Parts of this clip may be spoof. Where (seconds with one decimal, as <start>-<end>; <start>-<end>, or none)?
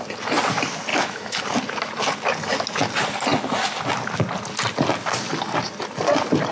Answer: 0.9-1.4